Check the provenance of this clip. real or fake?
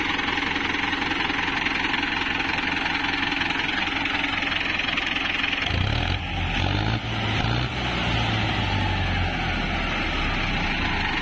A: real